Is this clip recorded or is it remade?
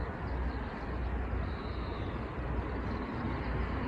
recorded